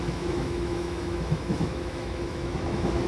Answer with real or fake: fake